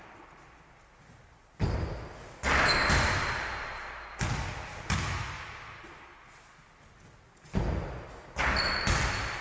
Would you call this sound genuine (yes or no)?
yes